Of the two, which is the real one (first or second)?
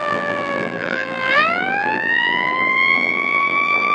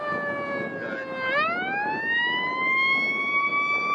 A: second